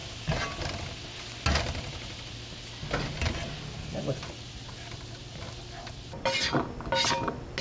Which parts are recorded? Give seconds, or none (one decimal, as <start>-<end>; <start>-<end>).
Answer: 0.0-7.6